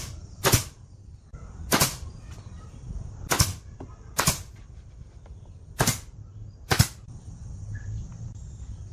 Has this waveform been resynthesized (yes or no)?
no